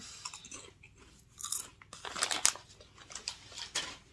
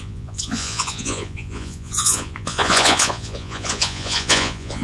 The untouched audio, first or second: first